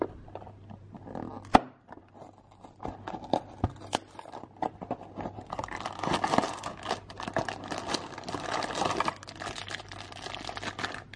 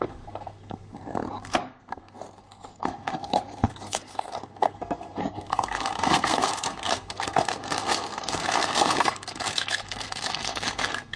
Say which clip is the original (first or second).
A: first